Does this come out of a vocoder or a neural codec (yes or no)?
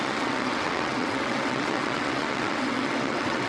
yes